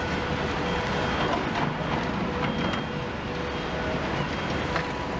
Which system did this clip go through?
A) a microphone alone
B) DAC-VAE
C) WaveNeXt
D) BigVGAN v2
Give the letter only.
A